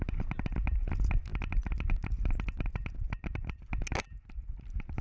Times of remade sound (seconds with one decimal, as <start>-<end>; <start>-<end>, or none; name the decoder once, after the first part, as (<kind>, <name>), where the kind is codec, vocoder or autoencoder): none